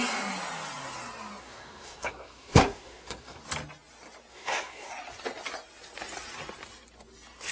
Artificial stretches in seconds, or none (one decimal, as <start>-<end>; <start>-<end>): 1.4-3.4; 4.3-4.9